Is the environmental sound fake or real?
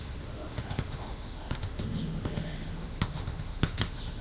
fake